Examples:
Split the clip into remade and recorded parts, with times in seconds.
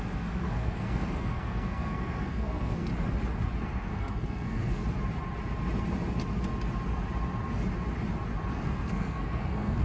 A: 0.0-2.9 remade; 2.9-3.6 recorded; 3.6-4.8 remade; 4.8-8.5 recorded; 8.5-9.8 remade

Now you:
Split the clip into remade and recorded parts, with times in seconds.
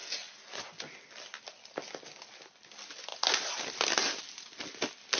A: 0.0-5.2 recorded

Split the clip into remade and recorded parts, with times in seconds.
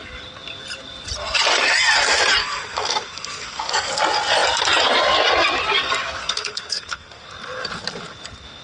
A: 0.0-2.4 recorded; 2.4-3.9 remade; 3.9-6.2 recorded; 6.2-7.3 remade; 7.3-8.6 recorded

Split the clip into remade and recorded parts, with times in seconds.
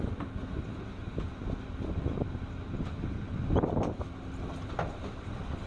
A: 0.0-5.7 recorded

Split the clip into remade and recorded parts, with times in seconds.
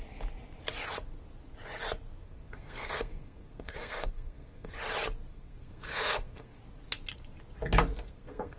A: 0.0-2.2 recorded; 2.2-4.7 remade; 4.7-5.3 recorded; 5.3-6.6 remade; 6.6-7.9 recorded; 7.9-8.6 remade